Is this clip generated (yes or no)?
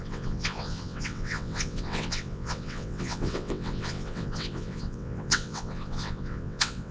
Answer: yes